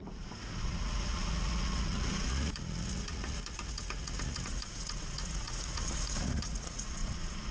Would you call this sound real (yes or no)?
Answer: no